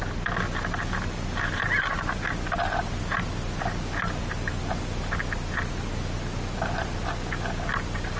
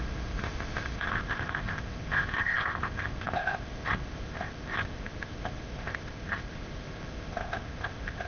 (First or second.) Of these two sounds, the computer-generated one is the second